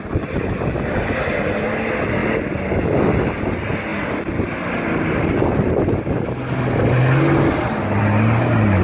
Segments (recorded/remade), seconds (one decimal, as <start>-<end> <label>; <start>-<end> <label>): 0.0-8.8 recorded